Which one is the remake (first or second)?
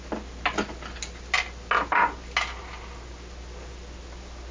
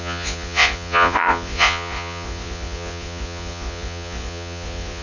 second